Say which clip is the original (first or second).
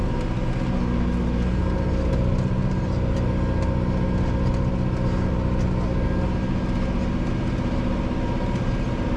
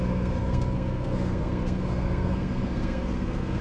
first